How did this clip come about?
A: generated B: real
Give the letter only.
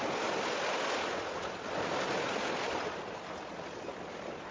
B